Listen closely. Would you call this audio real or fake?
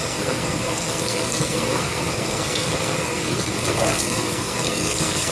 fake